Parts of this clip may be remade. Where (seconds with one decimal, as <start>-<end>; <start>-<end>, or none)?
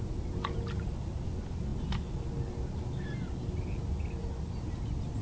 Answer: none